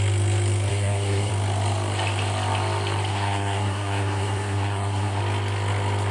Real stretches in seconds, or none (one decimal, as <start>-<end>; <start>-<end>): 0.0-0.7; 1.3-3.1; 5.2-6.1